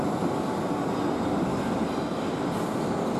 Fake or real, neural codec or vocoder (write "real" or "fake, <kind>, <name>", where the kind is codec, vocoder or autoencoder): real